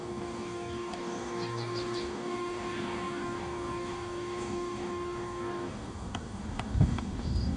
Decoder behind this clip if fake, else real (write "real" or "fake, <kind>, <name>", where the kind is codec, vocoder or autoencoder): fake, codec, DAC